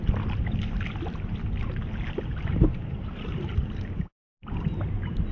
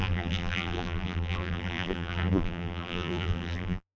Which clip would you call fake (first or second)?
second